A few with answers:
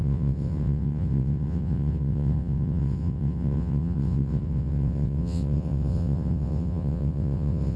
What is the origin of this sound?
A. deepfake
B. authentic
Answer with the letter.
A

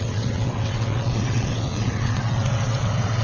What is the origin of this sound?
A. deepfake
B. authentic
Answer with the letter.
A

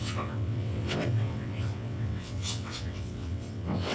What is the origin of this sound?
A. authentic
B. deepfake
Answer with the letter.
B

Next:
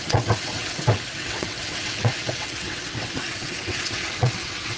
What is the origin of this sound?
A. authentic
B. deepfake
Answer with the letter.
B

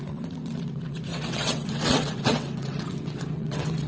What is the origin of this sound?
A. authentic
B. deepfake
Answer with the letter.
B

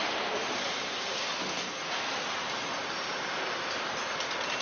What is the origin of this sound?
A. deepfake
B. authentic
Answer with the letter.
B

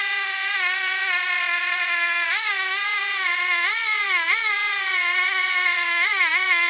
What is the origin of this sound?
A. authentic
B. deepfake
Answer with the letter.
B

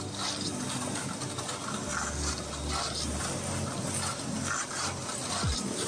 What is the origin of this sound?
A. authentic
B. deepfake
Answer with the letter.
A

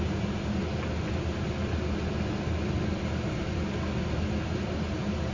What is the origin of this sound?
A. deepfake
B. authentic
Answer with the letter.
B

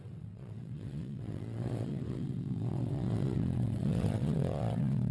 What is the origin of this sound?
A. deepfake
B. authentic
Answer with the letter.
A